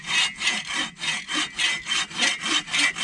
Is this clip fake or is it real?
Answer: real